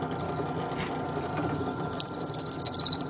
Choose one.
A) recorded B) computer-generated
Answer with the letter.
A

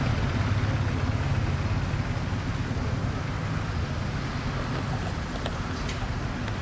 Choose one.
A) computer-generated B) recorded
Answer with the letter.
B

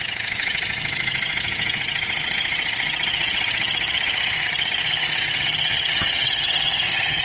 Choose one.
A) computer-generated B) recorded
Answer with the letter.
A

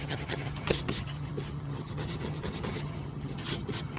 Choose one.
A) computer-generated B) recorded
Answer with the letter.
A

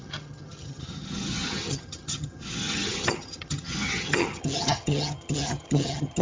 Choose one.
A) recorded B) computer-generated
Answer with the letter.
B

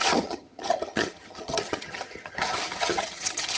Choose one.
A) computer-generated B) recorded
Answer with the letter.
A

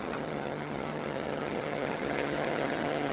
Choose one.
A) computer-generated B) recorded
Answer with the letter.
A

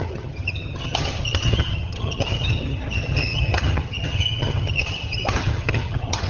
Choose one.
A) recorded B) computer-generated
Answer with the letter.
B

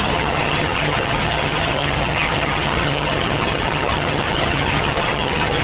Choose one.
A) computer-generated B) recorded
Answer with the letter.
A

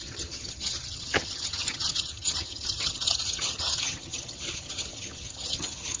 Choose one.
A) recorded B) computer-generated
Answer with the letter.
B